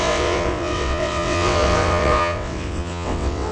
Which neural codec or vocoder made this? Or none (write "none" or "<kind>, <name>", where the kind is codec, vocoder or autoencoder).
vocoder, WaveNeXt